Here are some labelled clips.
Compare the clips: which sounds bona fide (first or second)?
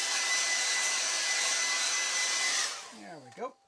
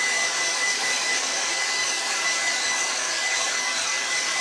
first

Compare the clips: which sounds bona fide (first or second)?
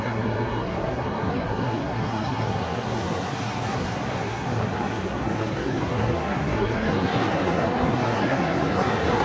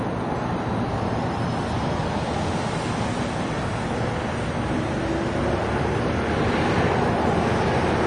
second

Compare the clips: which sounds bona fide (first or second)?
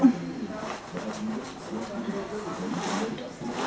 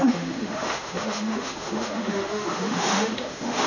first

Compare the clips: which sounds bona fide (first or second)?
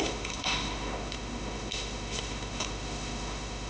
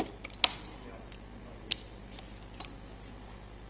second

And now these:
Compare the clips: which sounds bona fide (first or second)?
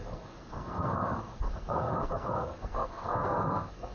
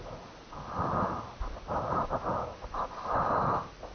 second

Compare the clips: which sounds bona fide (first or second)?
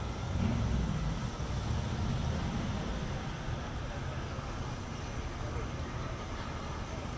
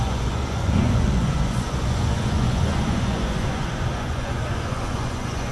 first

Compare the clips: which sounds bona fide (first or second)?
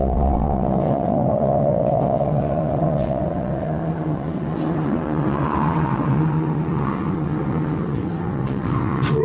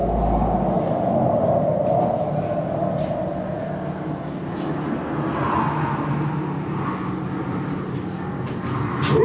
second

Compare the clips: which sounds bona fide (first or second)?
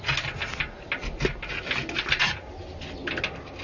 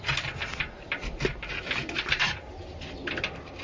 first